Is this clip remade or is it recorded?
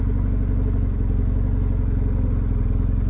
recorded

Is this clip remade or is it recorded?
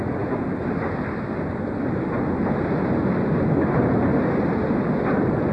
recorded